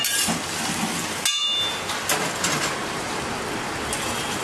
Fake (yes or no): no